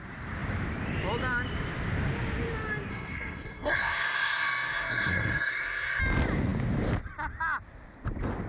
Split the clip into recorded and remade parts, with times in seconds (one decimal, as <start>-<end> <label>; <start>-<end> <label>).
0.0-2.9 recorded; 2.9-6.0 remade; 6.0-8.5 recorded